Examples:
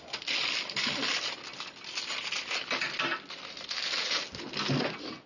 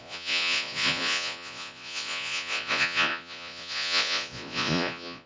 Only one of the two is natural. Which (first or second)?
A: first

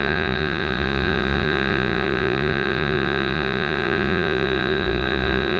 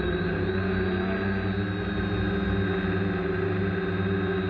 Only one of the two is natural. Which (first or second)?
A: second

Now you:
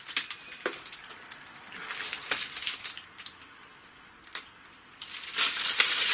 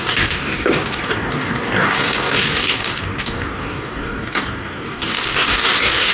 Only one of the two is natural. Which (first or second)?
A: first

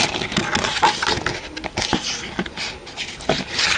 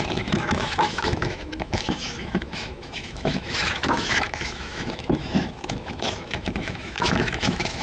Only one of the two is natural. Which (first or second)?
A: first